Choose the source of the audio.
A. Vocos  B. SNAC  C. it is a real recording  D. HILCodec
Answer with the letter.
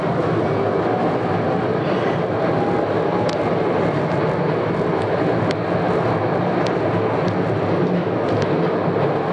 C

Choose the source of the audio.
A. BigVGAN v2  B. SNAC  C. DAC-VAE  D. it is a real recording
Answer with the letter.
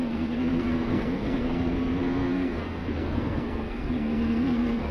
B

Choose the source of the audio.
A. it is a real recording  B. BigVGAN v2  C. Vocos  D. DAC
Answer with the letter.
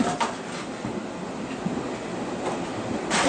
A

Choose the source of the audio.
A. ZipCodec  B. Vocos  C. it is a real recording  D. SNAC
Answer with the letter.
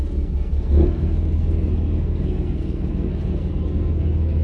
D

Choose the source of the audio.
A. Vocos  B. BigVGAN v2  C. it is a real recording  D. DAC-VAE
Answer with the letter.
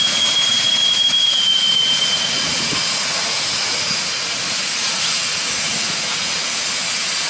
A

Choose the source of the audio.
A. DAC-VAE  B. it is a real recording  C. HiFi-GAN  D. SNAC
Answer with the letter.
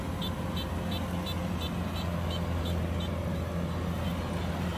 B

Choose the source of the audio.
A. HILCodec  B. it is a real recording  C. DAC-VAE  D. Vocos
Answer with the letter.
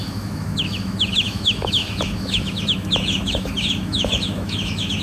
C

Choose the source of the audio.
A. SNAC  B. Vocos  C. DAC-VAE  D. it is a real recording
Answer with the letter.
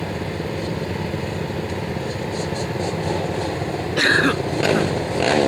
D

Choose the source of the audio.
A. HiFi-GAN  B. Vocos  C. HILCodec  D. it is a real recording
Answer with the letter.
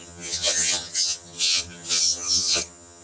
A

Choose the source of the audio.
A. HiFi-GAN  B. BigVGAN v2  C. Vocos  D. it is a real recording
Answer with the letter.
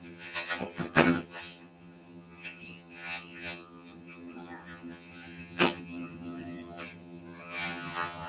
A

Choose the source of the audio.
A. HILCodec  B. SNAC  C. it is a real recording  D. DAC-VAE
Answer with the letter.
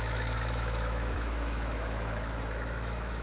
D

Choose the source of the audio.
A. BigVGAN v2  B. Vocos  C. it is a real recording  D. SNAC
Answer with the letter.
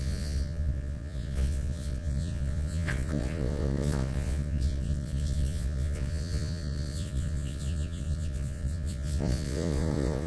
B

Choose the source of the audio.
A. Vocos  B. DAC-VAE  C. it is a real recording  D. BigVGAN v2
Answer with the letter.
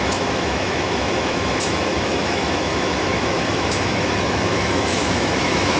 B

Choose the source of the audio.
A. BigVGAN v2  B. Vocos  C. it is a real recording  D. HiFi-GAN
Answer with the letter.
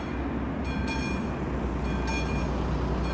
C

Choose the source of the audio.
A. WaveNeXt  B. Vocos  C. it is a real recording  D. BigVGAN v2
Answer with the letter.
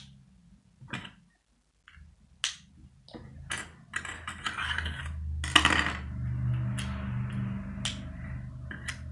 C